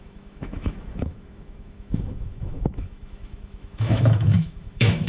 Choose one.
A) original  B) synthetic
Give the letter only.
B